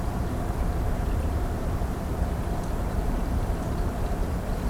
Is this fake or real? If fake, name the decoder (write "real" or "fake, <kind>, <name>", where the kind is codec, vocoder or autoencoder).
fake, vocoder, BigVGAN v2